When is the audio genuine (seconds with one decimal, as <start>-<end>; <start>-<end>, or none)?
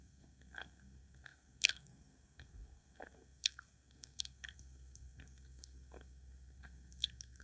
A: none